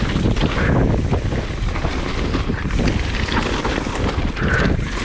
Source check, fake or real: real